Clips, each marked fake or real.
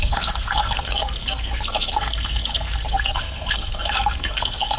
fake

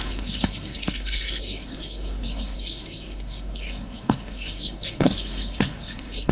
fake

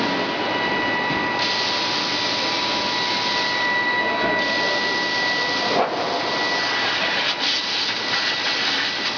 real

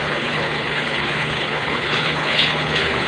fake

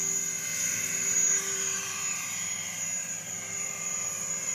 fake